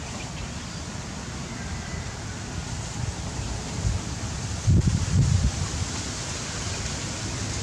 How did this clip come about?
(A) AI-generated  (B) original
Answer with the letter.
B